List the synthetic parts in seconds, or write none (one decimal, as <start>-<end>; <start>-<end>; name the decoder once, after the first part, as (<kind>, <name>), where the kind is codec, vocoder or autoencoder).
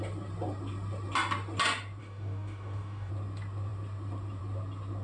2.0-3.1 (codec, DAC)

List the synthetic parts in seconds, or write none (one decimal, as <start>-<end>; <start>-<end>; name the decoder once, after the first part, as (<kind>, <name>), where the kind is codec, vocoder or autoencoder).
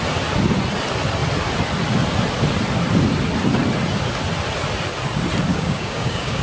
5.5-6.4 (codec, DAC)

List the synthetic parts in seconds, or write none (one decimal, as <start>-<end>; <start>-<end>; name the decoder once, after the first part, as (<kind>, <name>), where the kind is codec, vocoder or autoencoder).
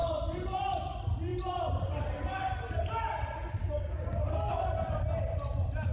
3.6-4.7 (codec, DAC)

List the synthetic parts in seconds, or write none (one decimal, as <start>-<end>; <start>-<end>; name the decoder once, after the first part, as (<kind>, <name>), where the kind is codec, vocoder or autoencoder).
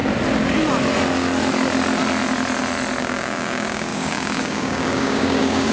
3.0-5.7 (codec, DAC)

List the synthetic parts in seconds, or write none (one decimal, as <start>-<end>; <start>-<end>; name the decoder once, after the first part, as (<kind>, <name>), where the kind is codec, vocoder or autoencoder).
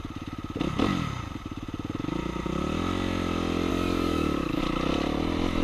3.7-4.6 (codec, DAC)